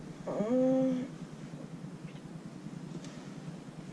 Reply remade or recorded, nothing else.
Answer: recorded